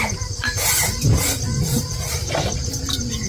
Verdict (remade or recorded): remade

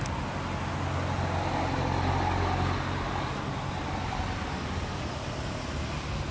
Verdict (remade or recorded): recorded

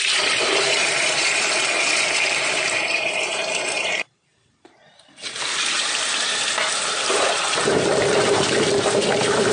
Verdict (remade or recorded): remade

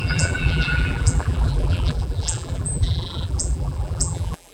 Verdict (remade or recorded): remade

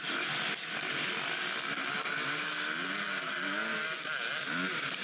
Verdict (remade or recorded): recorded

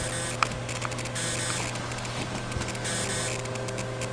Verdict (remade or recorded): recorded